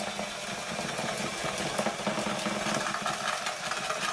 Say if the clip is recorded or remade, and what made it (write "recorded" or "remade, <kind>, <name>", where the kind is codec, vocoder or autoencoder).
recorded